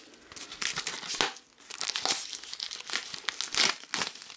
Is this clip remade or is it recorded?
recorded